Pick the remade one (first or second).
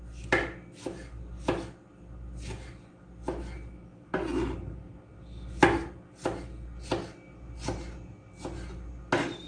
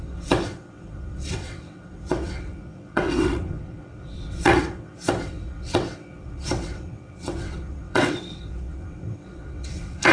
second